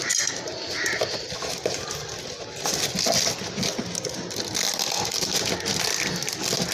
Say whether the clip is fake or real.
real